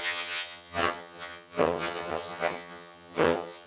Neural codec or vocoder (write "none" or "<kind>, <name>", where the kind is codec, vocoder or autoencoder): vocoder, HiFi-GAN